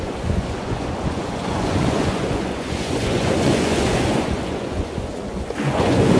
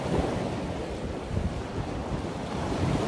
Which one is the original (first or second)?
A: second